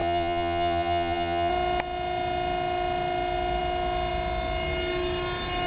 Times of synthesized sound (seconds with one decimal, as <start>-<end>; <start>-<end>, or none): 0.0-1.5